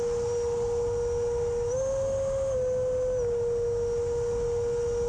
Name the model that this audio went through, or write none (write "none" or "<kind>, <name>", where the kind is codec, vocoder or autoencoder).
none